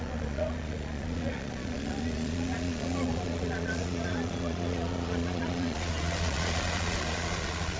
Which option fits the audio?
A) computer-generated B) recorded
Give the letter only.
A